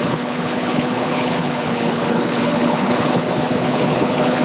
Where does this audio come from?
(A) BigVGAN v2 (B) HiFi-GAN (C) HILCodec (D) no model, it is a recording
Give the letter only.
C